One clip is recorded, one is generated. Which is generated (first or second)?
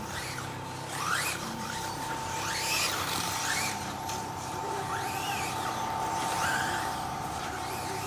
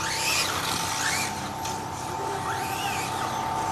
first